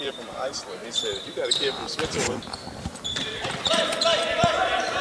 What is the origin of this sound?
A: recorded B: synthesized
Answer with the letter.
B